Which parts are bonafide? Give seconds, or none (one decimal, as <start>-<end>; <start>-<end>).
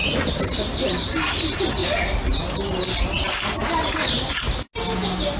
0.0-5.4